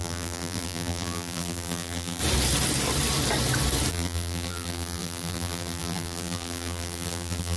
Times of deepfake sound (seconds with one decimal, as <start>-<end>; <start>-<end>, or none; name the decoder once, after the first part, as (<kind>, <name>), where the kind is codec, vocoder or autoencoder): 0.0-2.2 (vocoder, BigVGAN v2); 3.9-7.6